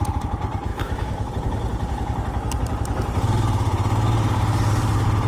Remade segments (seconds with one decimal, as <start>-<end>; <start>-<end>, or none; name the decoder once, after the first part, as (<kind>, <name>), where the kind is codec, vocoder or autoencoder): 0.7-1.3 (autoencoder, DAC-VAE)